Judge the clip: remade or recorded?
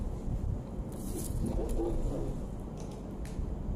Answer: recorded